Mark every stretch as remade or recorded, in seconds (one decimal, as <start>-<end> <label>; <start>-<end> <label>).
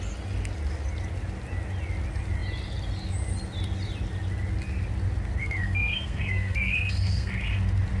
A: 0.0-5.4 recorded; 5.4-7.3 remade; 7.3-8.0 recorded